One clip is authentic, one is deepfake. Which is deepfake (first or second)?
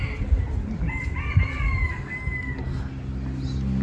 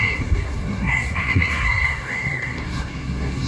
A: second